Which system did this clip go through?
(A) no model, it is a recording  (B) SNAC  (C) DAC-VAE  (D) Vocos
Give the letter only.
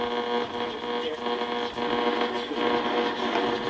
A